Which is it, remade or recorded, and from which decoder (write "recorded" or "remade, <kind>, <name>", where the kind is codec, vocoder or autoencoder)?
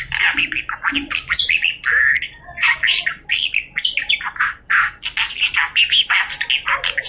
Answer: recorded